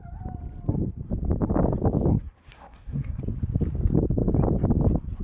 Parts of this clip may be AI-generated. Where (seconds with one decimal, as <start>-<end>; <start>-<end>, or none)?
2.1-3.2